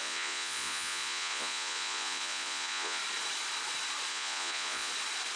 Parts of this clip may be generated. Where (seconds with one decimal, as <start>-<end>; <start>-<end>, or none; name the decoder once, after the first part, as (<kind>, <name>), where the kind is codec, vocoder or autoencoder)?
0.0-3.0 (vocoder, Vocos); 4.1-4.9